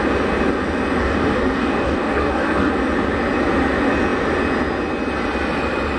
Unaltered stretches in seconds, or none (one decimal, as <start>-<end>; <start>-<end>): 0.0-1.0; 2.7-6.0